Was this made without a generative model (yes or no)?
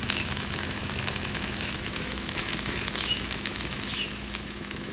no